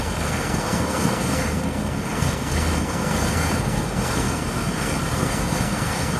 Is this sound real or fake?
fake